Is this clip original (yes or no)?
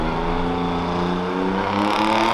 yes